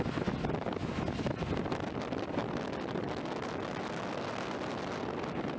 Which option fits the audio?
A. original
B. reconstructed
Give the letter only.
A